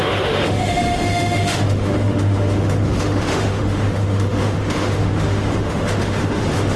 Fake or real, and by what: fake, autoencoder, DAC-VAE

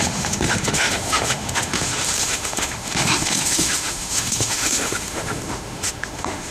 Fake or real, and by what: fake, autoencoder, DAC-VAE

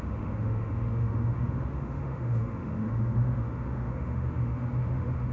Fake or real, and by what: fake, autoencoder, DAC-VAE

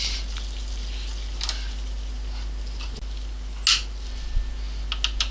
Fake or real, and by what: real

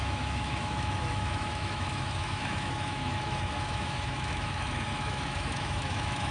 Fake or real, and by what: fake, autoencoder, DAC-VAE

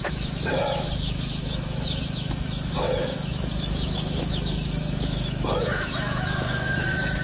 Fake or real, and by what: fake, autoencoder, DAC-VAE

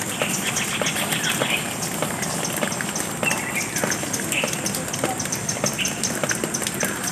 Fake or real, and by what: real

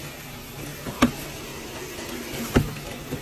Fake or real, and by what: real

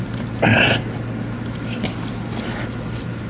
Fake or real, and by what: real